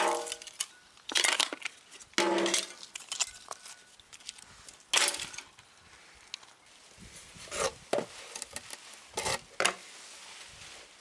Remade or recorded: recorded